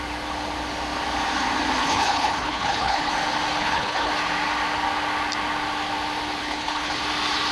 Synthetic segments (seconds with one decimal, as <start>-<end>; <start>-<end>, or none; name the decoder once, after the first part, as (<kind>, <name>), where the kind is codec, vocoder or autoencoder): 1.8-3.1 (codec, HILCodec); 3.6-4.1; 6.4-7.0